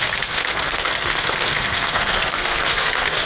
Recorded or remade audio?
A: remade